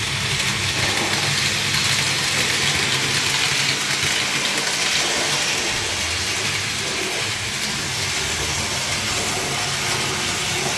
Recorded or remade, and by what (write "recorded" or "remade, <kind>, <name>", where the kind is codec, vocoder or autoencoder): recorded